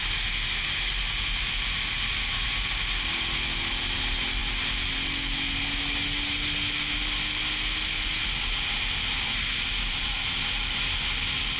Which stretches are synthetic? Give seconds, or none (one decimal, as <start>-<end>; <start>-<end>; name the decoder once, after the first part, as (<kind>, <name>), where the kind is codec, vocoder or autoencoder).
none